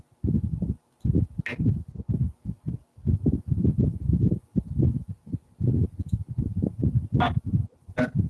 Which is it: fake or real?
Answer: real